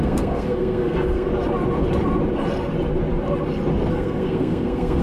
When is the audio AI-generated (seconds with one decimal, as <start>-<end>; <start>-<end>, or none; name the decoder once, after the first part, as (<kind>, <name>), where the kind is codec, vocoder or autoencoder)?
0.0-1.3 (codec, SNAC); 3.9-5.0